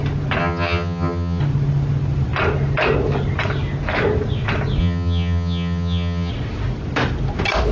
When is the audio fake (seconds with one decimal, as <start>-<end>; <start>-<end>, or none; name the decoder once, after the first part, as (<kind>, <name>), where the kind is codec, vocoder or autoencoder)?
0.4-1.4 (vocoder, HiFi-GAN); 4.8-6.3